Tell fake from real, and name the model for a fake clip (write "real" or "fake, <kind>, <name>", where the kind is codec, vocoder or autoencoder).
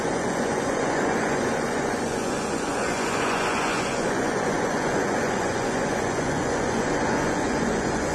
fake, vocoder, Vocos